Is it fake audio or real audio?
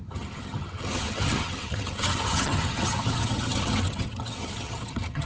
fake